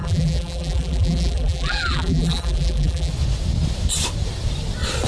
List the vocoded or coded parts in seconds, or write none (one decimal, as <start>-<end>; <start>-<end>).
0.0-3.1